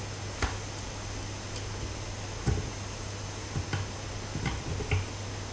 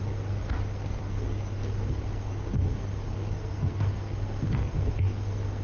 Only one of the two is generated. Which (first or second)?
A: second